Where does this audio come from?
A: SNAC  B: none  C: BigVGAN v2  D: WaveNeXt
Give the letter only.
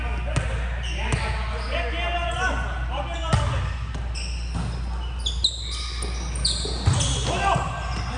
B